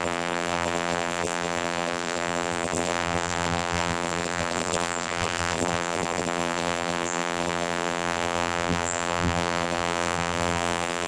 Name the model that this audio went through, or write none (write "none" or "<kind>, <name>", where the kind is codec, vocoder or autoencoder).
vocoder, BigVGAN v2